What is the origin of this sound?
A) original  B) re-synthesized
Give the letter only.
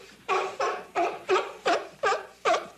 B